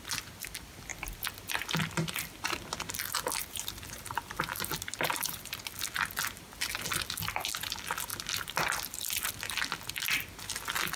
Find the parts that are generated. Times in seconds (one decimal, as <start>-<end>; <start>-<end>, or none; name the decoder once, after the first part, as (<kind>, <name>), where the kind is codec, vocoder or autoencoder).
3.4-5.8 (vocoder, BigVGAN v2)